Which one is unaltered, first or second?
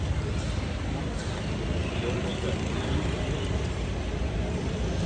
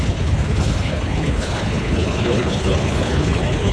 first